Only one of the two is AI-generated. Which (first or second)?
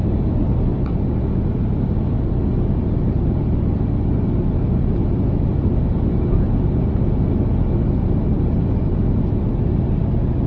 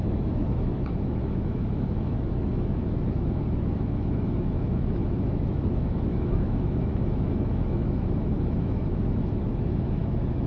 second